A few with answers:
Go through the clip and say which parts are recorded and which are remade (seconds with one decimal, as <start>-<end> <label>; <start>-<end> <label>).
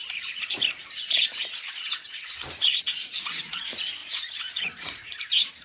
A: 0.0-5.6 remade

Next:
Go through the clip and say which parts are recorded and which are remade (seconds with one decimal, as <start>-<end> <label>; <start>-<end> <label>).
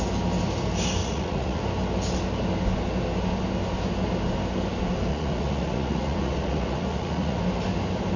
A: 0.0-1.0 recorded; 1.0-1.6 remade; 1.6-5.1 recorded; 5.1-7.4 remade; 7.4-8.2 recorded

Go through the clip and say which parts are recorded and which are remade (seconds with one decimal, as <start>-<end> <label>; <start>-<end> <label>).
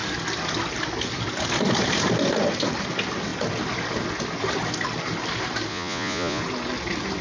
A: 0.0-5.7 recorded; 5.7-6.4 remade; 6.4-7.2 recorded